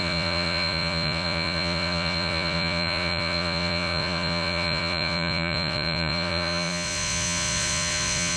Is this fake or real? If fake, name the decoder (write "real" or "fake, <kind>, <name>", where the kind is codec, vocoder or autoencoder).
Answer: fake, vocoder, Vocos